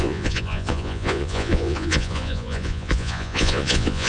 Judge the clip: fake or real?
fake